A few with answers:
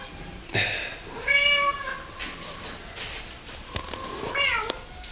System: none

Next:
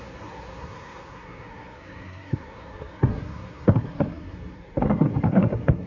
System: codec, SNAC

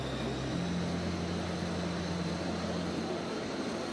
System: none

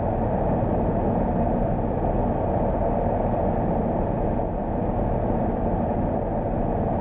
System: none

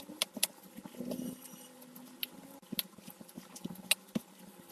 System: none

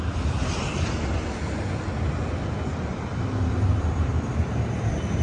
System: none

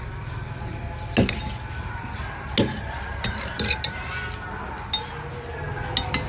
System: none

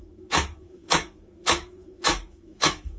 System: autoencoder, DAC-VAE